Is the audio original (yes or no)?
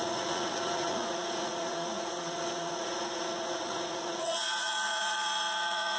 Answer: no